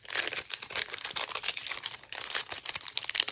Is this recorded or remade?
recorded